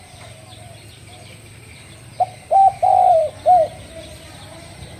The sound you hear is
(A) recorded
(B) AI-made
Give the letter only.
B